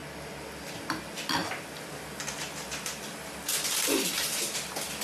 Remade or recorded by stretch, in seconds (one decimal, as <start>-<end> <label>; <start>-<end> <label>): 0.0-5.0 recorded